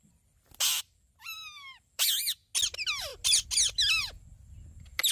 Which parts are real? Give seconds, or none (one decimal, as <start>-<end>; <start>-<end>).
0.0-5.1